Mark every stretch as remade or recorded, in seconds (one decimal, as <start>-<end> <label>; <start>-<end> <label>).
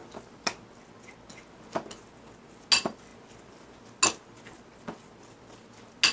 0.0-6.1 recorded